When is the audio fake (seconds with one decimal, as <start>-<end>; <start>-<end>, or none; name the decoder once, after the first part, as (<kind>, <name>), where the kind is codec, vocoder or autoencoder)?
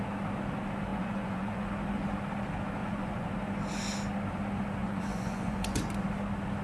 0.9-1.7 (vocoder, Vocos); 2.8-3.3; 4.8-5.9